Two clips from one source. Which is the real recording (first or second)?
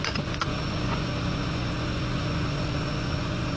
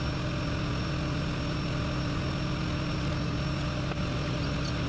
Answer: second